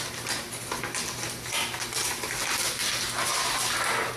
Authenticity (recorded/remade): recorded